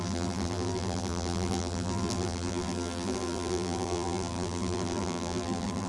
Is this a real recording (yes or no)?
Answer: no